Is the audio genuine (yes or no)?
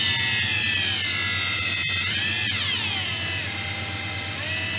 yes